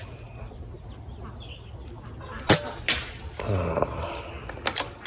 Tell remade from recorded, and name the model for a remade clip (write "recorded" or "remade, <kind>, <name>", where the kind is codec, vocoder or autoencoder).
recorded